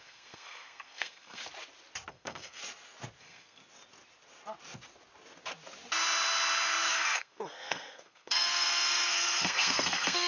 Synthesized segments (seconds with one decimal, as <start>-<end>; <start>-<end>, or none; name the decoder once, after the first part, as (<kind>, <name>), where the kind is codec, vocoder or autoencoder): 0.0-1.4 (codec, SNAC); 2.1-2.6; 3.2-3.6; 6.9-10.3